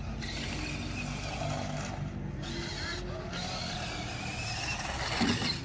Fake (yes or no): no